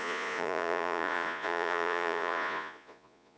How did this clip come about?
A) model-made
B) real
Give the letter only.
A